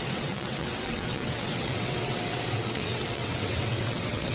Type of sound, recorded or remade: remade